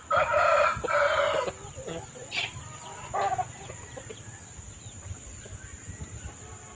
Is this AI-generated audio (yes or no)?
no